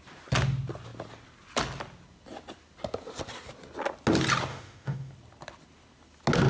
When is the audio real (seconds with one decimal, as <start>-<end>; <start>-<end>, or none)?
0.0-4.5; 5.1-6.5